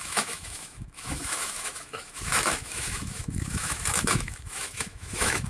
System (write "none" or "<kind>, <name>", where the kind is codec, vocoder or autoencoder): autoencoder, DAC-VAE